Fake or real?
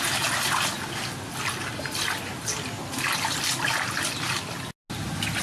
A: real